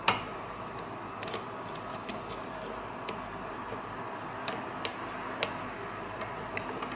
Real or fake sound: real